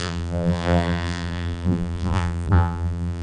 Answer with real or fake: fake